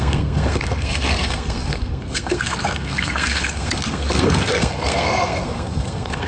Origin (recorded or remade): remade